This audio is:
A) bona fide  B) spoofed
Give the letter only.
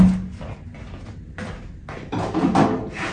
A